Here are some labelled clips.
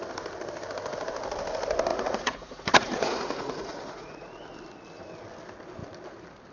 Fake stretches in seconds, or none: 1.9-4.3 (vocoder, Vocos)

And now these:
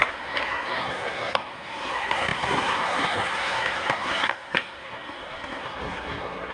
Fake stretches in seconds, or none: 0.0-6.5 (codec, SNAC)

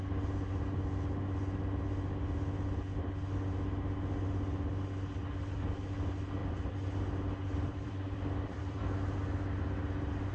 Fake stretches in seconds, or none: 6.4-8.8 (vocoder, BigVGAN v2)

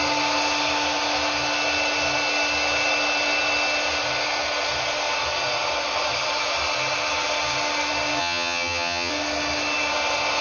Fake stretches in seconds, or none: 8.2-9.1 (vocoder, HiFi-GAN)

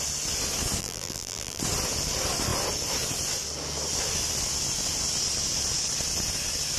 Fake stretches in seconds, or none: 0.8-1.6 (vocoder, BigVGAN v2)

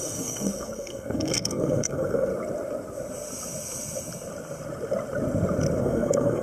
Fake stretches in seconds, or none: 0.0-2.3 (codec, SNAC); 5.8-6.4

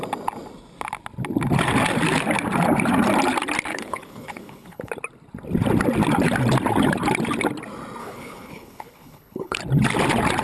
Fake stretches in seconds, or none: 3.7-4.9 (codec, HILCodec); 8.0-9.6

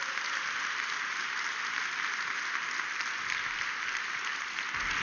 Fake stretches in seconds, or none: none